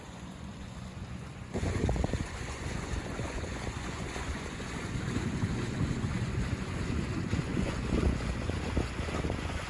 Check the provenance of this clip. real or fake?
fake